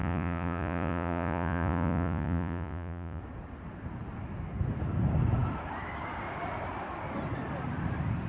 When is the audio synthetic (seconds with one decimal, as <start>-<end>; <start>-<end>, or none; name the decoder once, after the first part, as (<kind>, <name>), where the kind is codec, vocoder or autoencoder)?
0.0-3.2 (vocoder, Vocos)